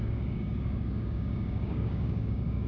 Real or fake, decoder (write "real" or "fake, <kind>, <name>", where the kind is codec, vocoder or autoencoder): fake, codec, DAC